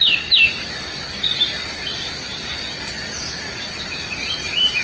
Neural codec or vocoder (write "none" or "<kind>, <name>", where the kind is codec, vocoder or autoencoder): none